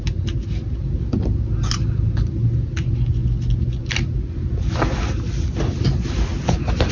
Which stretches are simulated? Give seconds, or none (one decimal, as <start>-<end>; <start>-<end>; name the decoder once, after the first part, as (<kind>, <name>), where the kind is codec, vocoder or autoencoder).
none